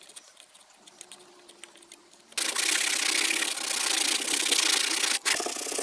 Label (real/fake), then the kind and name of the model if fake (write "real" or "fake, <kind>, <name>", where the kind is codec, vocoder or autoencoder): real